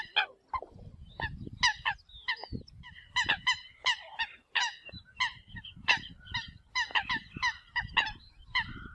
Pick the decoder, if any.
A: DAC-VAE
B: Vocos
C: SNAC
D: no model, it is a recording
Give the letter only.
D